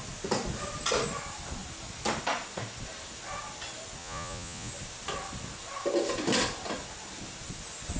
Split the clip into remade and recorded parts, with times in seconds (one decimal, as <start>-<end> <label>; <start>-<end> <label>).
0.0-4.0 recorded; 4.0-4.7 remade; 4.7-8.0 recorded